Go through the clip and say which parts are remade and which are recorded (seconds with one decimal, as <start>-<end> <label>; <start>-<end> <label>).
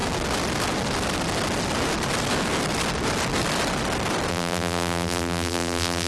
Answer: 0.0-4.3 recorded; 4.3-6.1 remade